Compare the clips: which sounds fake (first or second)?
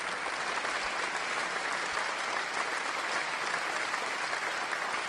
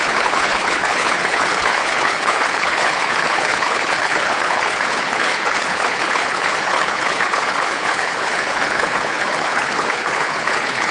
second